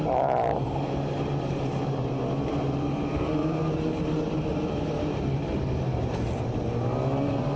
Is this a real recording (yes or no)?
no